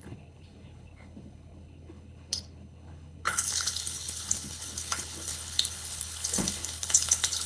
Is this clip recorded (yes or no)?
no